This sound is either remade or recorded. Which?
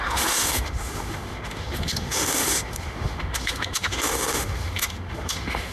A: remade